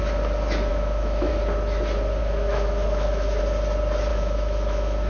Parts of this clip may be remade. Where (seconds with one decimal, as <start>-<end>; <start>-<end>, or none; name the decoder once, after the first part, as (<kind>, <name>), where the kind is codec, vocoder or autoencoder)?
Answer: 0.7-1.3 (autoencoder, DAC-VAE); 2.2-3.4; 4.1-5.1